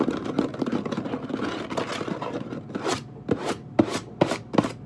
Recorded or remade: recorded